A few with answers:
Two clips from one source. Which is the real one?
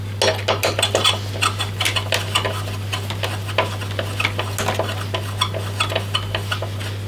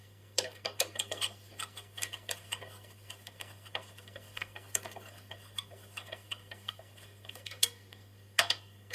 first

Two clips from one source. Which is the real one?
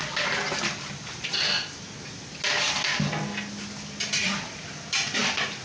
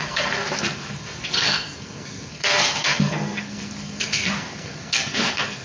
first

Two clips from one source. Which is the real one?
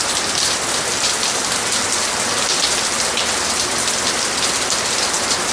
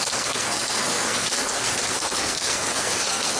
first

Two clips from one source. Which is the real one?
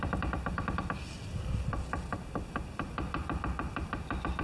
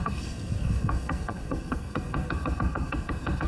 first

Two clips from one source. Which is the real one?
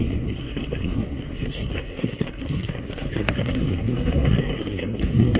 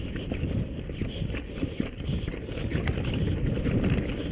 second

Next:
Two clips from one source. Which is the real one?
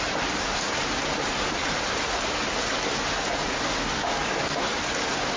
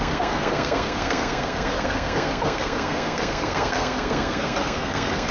first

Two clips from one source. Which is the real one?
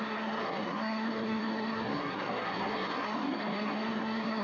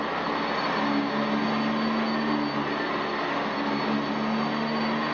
second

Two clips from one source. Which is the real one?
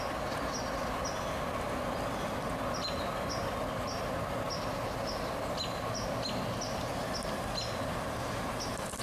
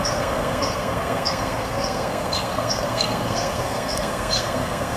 first